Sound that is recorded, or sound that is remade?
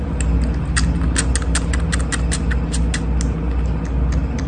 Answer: recorded